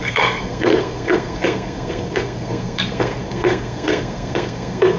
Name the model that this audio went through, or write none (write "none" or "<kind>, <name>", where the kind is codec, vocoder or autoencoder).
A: codec, SNAC